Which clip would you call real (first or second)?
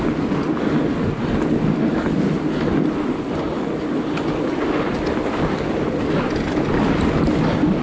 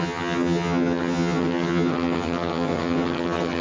first